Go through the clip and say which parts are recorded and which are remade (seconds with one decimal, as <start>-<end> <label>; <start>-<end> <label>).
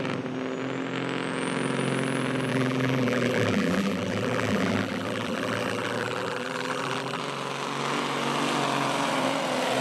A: 0.0-2.5 recorded; 2.5-7.2 remade; 7.2-9.8 recorded